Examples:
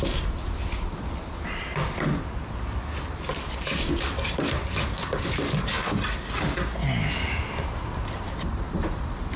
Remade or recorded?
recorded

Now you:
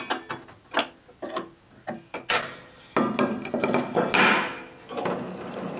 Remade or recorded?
recorded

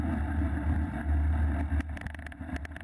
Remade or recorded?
recorded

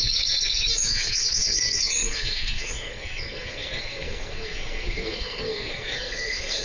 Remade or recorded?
remade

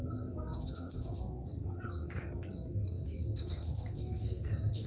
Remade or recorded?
remade